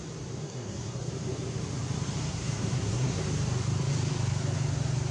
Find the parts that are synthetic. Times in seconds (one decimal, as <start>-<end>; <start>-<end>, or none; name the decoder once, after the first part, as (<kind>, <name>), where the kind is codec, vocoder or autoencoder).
0.4-1.1 (codec, SNAC); 2.2-3.2